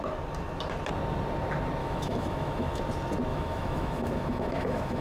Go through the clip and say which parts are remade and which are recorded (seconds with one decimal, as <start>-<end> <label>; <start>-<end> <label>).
0.0-1.8 recorded; 1.8-2.8 remade; 2.8-3.3 recorded; 3.3-5.0 remade